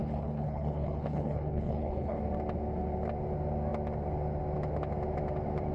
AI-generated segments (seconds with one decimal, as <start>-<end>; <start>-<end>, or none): 0.0-2.2